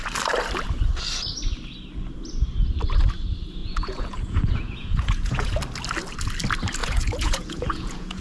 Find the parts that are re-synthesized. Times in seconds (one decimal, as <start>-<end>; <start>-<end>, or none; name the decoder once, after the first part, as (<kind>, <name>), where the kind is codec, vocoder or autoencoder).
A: 3.6-5.6 (vocoder, Vocos); 6.8-8.2